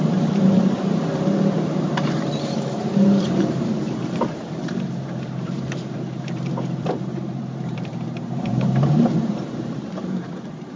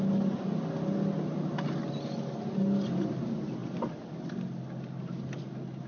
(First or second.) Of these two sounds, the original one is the second